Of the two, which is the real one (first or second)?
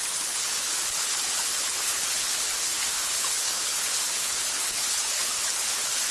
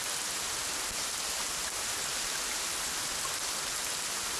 second